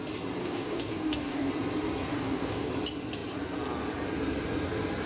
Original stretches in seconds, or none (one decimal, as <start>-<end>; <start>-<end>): 0.0-0.4; 1.5-2.1; 2.7-5.1